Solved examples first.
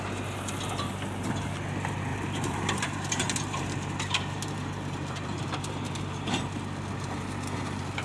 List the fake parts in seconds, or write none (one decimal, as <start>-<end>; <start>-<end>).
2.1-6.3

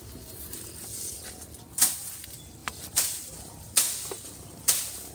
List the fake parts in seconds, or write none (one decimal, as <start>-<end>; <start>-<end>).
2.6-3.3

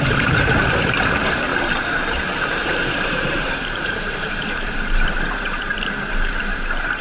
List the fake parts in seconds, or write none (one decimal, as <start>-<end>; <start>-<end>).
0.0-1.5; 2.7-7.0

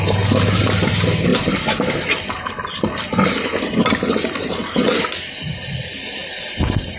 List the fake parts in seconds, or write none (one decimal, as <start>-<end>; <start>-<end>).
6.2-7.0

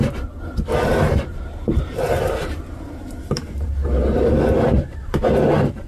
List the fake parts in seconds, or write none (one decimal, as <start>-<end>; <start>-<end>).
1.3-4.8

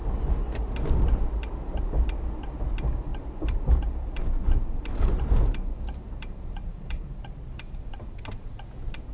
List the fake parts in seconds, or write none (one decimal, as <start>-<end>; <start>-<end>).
3.1-8.2